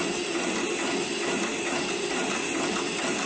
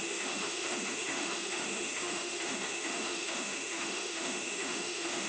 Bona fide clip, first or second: first